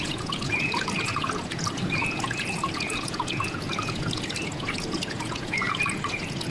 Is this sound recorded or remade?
remade